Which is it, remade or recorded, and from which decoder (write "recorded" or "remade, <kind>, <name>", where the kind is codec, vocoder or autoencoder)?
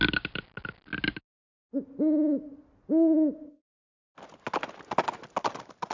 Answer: recorded